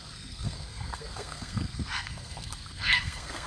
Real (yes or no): no